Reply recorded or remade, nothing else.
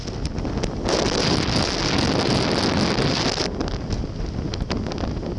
recorded